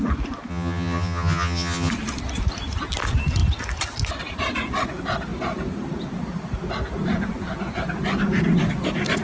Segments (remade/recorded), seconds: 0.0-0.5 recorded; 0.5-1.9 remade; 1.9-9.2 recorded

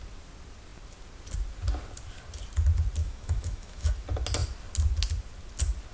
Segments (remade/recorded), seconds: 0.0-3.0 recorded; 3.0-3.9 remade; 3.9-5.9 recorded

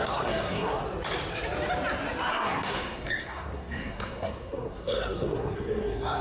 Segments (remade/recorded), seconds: 0.0-0.8 remade; 0.8-2.3 recorded; 2.3-6.2 remade